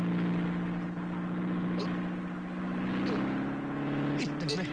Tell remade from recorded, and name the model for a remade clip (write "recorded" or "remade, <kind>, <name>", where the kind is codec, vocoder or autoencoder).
recorded